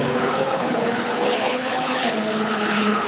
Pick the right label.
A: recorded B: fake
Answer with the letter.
B